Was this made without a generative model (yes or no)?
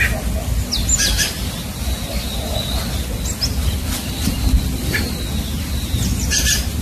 yes